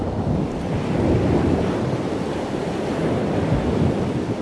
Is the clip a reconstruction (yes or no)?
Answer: no